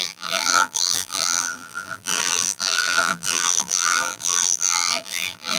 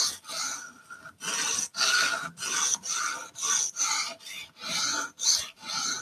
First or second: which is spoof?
first